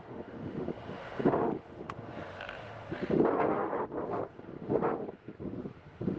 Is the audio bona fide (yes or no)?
no